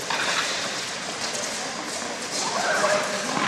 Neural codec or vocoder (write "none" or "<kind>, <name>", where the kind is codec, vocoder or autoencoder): none